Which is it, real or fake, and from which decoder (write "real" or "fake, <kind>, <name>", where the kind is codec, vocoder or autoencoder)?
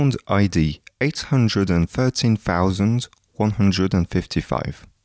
real